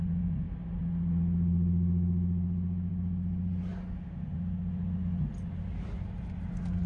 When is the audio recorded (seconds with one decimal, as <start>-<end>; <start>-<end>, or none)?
0.8-6.9